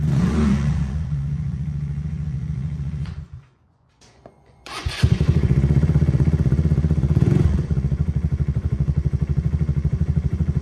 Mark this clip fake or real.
fake